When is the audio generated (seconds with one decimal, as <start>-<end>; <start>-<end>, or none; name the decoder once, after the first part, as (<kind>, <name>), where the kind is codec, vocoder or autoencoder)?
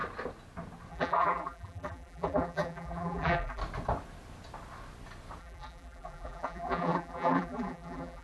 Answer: 0.9-3.6 (vocoder, BigVGAN v2); 5.4-8.2